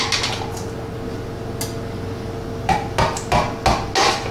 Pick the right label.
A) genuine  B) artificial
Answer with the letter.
A